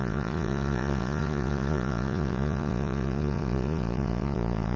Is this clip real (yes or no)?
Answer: no